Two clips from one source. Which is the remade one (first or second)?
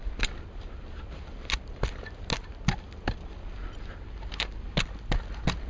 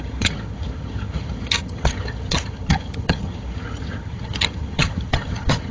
second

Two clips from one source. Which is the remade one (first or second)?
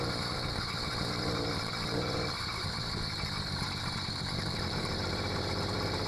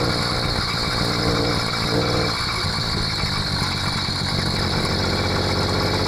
first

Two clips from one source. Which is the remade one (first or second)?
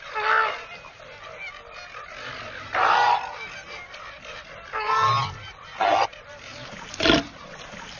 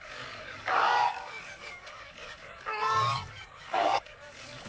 second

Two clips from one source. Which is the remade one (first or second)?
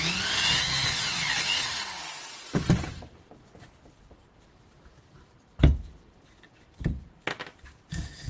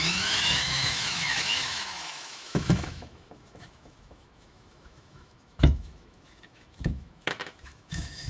second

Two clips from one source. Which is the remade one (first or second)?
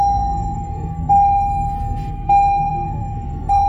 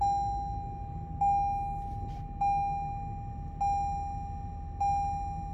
first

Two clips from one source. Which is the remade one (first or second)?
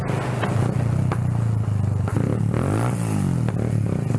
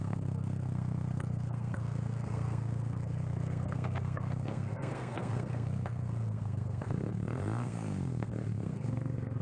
second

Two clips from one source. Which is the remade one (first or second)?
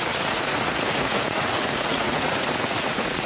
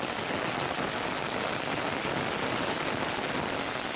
first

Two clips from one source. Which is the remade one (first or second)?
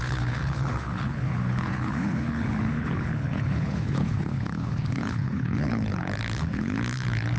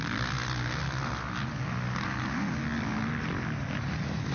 first